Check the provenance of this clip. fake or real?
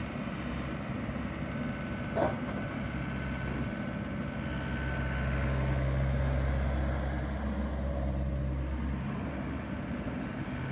real